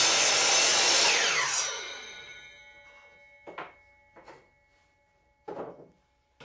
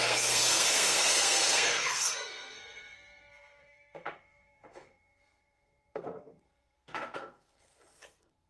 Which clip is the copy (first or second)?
second